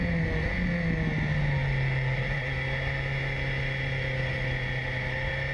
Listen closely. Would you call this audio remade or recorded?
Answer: recorded